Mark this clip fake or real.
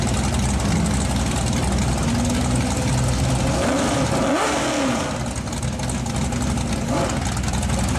real